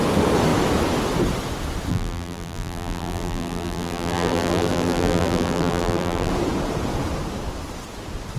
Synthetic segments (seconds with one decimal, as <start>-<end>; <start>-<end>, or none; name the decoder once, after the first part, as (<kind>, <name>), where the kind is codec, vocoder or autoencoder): 1.9-6.3 (vocoder, BigVGAN v2)